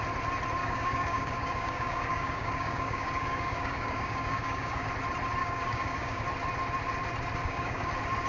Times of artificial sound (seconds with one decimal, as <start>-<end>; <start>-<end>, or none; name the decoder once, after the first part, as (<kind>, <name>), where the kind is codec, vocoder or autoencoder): 0.6-4.9 (codec, DAC); 5.4-6.2; 7.4-7.9

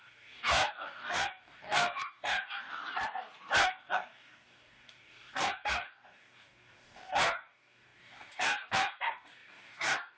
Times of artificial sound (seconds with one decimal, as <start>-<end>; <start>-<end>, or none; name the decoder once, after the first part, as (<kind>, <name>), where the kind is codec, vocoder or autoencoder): 0.0-2.8 (codec, DAC); 3.6-10.2

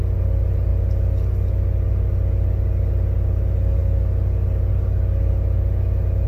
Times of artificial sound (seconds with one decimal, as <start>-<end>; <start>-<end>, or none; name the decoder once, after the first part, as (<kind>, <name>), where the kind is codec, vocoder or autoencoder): none